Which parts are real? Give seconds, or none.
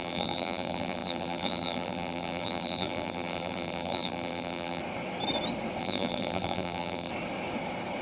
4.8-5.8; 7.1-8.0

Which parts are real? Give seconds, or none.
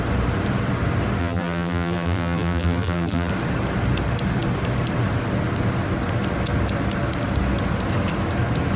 0.0-1.2; 3.3-8.8